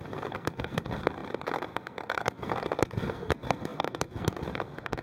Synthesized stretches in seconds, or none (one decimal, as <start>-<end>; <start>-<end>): 0.0-5.0